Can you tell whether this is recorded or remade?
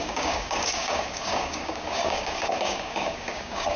remade